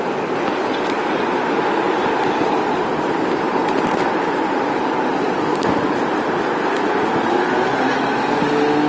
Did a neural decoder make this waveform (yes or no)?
no